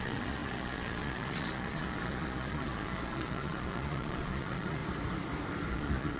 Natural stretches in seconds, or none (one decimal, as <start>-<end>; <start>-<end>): 4.8-5.7